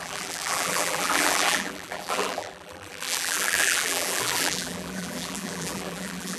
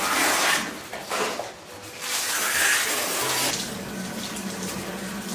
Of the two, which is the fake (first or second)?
first